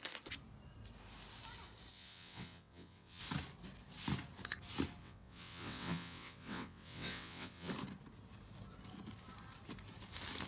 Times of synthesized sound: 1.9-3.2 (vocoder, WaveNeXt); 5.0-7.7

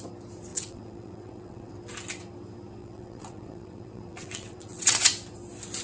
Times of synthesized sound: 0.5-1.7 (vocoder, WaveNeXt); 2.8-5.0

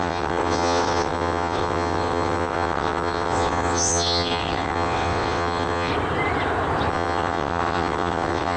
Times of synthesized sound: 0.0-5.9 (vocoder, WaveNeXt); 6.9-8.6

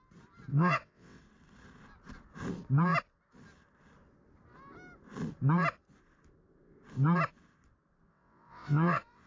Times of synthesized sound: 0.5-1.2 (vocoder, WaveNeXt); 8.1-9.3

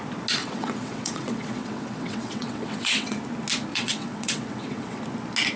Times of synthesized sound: 0.4-3.2 (vocoder, WaveNeXt); 3.7-5.0

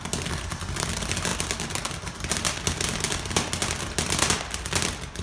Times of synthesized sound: none

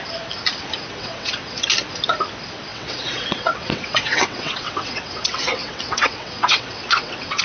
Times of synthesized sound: 0.9-1.6 (vocoder, WaveNeXt); 2.7-7.4